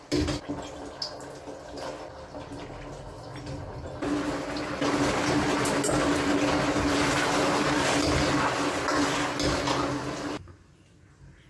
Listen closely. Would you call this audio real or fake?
real